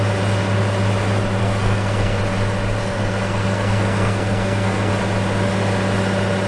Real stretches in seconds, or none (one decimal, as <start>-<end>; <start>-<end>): 0.0-1.4; 2.2-2.8; 4.9-6.5